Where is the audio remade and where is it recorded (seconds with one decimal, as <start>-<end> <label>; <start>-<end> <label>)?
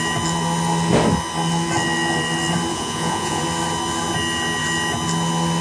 0.0-2.7 recorded; 2.7-3.4 remade; 3.4-5.6 recorded